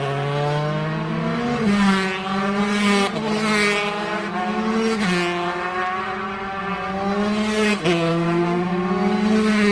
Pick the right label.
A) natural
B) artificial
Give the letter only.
A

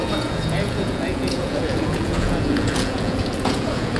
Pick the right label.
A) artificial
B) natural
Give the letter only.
A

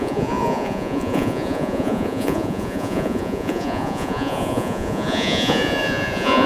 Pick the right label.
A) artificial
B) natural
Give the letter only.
A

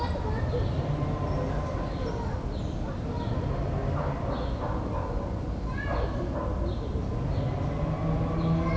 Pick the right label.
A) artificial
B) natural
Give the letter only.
B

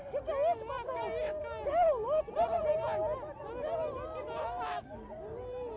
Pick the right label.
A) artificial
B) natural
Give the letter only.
B